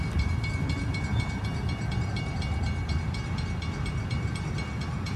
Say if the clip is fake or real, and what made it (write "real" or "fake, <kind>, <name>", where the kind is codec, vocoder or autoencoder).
fake, vocoder, BigVGAN v2